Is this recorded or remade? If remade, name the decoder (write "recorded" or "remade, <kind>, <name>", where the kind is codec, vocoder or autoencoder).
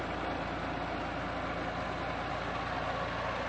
recorded